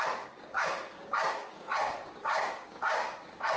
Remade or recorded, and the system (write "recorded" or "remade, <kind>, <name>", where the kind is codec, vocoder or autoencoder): remade, codec, DAC